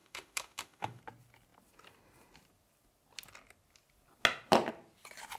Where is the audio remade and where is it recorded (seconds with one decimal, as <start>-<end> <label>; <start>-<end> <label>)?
0.0-1.0 remade; 1.0-5.4 recorded